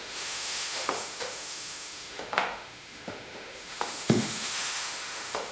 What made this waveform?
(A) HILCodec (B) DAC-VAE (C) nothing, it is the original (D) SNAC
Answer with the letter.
B